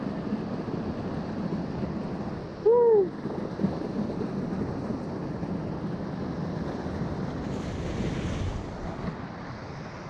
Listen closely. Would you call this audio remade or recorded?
recorded